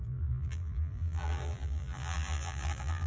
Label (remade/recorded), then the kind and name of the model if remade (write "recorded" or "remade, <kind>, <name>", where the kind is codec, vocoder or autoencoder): remade, vocoder, BigVGAN v2